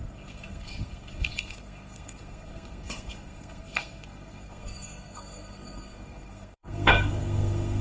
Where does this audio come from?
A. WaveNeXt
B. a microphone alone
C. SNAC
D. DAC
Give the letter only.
C